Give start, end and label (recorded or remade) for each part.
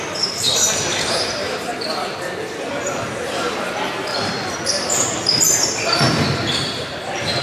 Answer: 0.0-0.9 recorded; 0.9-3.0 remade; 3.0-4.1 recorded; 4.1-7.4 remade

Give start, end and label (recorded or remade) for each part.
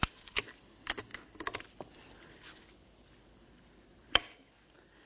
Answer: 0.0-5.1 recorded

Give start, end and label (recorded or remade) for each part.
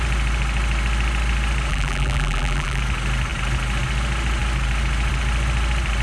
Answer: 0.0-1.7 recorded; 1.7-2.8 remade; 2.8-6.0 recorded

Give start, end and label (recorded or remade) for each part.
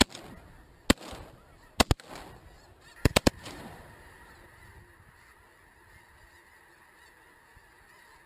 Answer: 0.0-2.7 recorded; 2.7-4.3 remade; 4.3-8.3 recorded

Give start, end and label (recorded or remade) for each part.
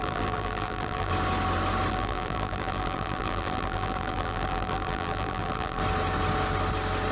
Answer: 0.0-1.1 remade; 1.1-1.9 recorded; 1.9-5.8 remade; 5.8-7.1 recorded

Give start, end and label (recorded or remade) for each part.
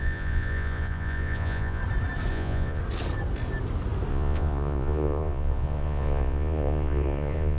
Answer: 0.0-1.8 remade; 1.8-2.3 recorded; 2.3-2.8 remade; 2.8-4.1 recorded; 4.1-7.6 remade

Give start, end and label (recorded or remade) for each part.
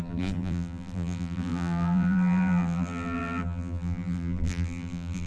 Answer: 0.0-5.3 remade